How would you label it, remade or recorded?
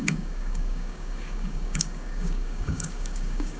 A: remade